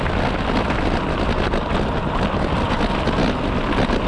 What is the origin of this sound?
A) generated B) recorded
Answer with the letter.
B